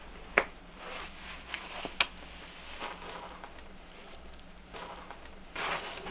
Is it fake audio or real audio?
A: real